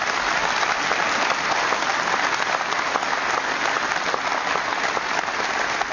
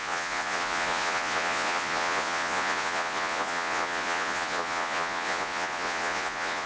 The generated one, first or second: second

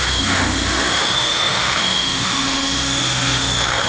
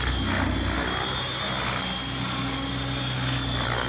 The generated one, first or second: first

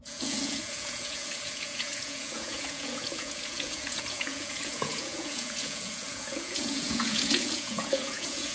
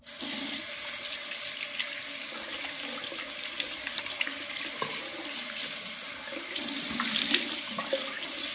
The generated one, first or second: first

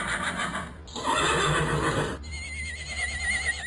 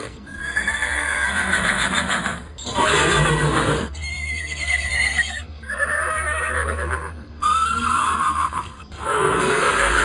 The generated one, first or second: second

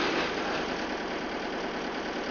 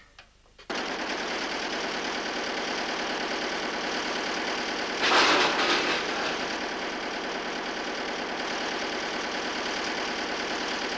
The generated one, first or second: first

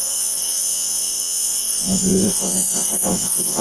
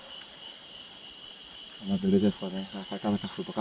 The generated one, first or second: first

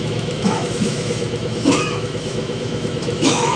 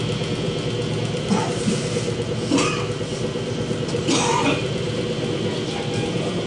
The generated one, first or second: first